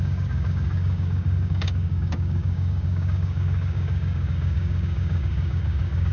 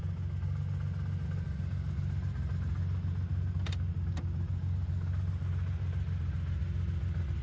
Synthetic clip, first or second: first